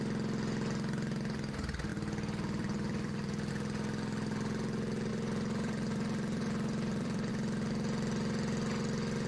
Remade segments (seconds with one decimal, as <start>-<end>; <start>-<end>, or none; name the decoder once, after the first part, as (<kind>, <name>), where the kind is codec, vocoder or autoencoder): 1.9-3.5 (vocoder, BigVGAN v2); 5.1-7.3